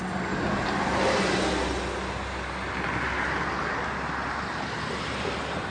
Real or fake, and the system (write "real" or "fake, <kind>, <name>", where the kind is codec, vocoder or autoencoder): real